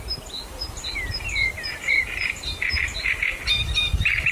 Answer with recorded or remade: remade